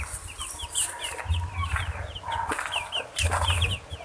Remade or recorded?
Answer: recorded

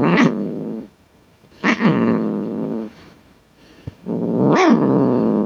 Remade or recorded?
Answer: remade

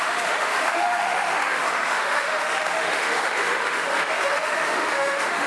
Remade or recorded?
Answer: remade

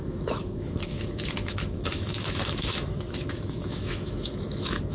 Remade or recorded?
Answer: remade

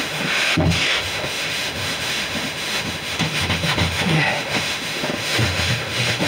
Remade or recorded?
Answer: remade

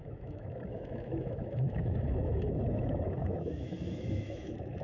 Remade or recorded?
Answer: remade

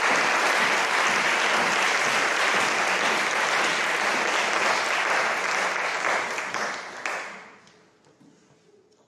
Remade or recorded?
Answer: recorded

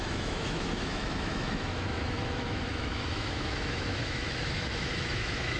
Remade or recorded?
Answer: remade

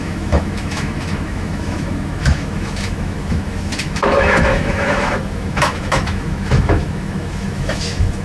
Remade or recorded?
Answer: remade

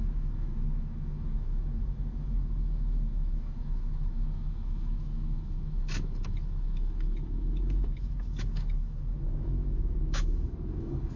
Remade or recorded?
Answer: remade